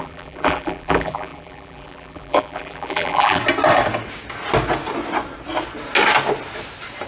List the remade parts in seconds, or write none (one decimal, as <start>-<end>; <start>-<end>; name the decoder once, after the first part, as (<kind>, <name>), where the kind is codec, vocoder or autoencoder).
0.0-3.4 (vocoder, BigVGAN v2)